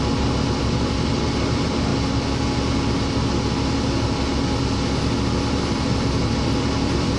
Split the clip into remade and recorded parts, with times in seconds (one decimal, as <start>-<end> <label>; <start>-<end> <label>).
0.0-1.9 remade; 1.9-4.7 recorded; 4.7-7.2 remade

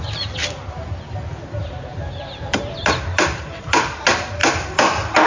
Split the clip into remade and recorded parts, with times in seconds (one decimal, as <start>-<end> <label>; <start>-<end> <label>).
0.0-1.9 recorded; 1.9-4.0 remade; 4.0-4.4 recorded; 4.4-5.3 remade

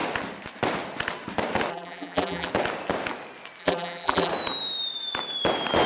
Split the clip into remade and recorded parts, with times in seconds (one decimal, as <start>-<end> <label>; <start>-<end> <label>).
0.0-1.7 recorded; 1.7-2.5 remade; 2.5-3.6 recorded; 3.6-4.3 remade; 4.3-5.9 recorded

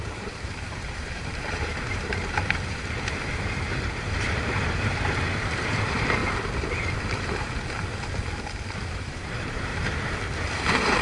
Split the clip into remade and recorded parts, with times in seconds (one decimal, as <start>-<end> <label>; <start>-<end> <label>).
0.0-6.2 remade; 6.2-8.9 recorded; 8.9-9.7 remade; 9.7-10.4 recorded; 10.4-11.0 remade